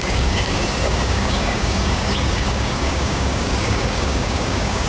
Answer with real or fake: fake